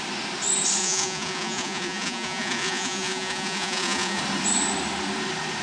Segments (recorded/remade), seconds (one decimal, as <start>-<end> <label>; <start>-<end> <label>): 0.0-0.8 recorded; 0.8-4.2 remade; 4.2-5.6 recorded